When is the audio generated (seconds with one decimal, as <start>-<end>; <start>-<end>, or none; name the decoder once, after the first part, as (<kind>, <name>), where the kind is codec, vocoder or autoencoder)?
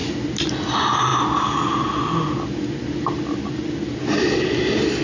none